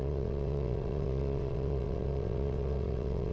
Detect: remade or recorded remade